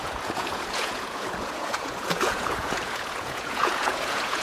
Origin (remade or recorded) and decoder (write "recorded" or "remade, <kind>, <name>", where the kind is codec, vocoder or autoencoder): remade, vocoder, Vocos